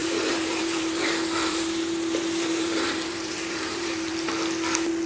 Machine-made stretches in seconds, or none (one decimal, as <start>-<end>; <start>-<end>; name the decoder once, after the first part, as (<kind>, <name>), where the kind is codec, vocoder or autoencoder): 0.0-4.1 (vocoder, BigVGAN v2)